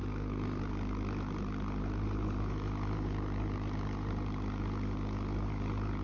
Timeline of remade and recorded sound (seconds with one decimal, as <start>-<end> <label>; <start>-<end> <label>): 0.0-0.6 remade; 0.6-6.0 recorded